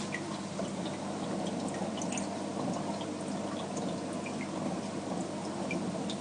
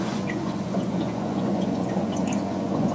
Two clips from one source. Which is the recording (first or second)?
first